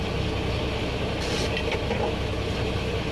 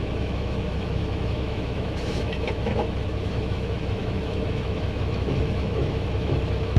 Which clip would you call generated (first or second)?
second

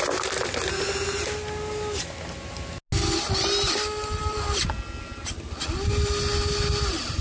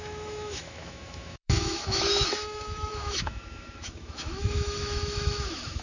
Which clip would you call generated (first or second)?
second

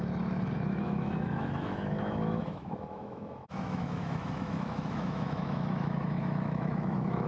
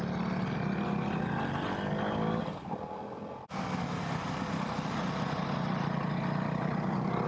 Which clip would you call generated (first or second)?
first